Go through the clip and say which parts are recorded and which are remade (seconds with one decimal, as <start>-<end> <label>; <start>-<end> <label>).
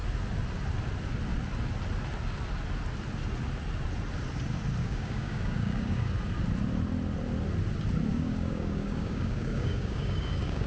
0.0-4.8 recorded; 4.8-6.1 remade; 6.1-8.1 recorded; 8.1-10.7 remade